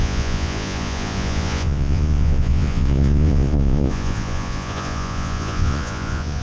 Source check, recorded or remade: remade